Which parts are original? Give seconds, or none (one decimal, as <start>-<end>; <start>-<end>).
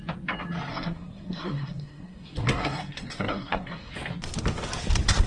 0.0-0.7; 3.9-5.3